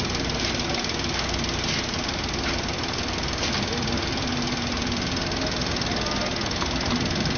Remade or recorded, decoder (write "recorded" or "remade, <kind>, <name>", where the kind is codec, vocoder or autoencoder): recorded